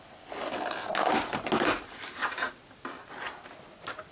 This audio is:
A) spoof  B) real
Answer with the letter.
B